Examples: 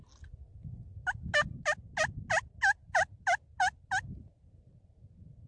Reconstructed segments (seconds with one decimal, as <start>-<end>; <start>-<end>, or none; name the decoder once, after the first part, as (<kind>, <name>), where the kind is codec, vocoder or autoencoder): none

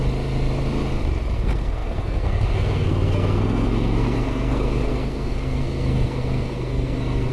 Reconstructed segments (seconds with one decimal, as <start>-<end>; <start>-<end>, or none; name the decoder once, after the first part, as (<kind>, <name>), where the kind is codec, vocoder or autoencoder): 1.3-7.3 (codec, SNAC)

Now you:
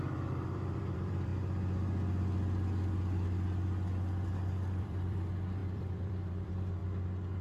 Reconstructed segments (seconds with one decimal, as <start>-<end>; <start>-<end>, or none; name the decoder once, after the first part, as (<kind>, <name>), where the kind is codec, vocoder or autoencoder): 0.0-1.3 (vocoder, BigVGAN v2); 4.8-6.8

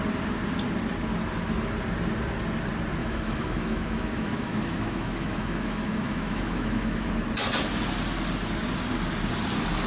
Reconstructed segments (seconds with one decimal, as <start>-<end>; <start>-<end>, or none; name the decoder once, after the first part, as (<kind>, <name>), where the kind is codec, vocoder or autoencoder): 3.0-7.1 (autoencoder, DAC-VAE)

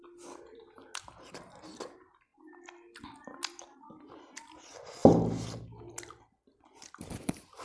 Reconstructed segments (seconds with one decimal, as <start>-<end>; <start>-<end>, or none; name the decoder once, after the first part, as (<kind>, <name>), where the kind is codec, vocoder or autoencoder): none

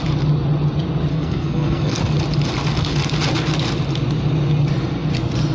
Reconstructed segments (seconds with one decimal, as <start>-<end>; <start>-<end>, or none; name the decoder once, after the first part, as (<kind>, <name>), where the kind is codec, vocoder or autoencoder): 1.1-2.0 (codec, SNAC)

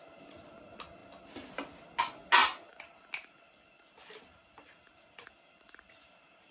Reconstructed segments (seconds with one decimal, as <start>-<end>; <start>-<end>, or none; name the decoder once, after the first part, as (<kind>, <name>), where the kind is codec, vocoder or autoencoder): none

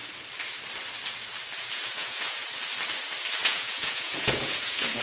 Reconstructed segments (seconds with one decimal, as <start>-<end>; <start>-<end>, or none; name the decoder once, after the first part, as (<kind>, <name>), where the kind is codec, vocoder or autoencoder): 1.6-2.4 (vocoder, Vocos); 3.4-5.0